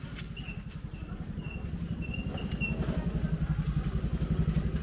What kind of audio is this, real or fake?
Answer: real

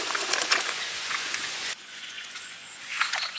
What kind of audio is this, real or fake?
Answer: fake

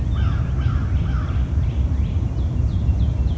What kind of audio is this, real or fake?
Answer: real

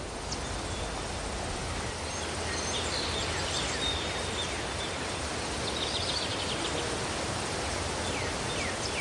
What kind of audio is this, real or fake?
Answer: real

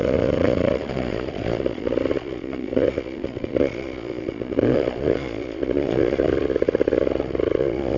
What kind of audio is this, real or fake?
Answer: fake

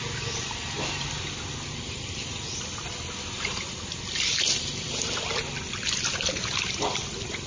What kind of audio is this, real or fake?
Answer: real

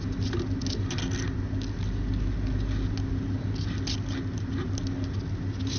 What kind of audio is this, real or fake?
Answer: real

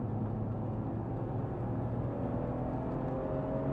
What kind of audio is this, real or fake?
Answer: real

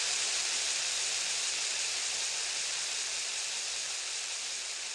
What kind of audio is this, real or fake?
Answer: real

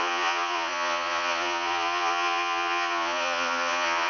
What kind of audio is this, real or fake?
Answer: fake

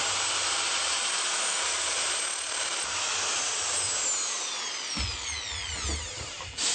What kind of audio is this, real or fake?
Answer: real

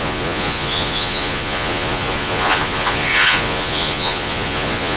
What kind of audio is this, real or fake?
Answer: fake